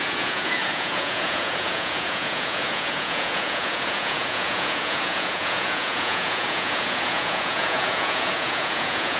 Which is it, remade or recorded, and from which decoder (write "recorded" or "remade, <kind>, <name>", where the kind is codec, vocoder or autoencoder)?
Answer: remade, vocoder, Vocos